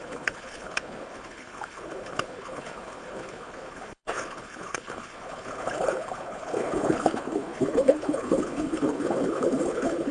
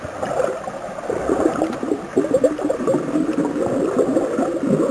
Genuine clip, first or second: second